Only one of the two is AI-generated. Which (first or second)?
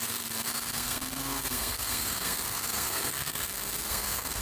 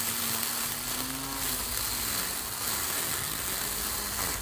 first